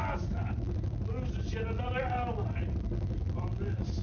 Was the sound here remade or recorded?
recorded